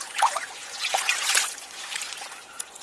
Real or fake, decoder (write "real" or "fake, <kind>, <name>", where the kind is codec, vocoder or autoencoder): fake, vocoder, Vocos